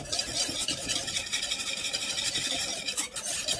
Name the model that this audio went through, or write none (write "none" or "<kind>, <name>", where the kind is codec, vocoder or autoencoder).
vocoder, BigVGAN v2